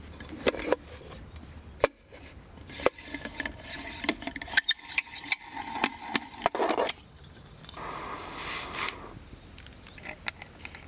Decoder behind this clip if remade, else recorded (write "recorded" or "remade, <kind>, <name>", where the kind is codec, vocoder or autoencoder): recorded